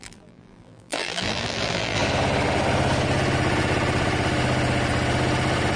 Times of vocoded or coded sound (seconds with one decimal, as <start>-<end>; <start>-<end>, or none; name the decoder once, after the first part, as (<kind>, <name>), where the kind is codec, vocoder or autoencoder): 0.0-2.0 (vocoder, BigVGAN v2)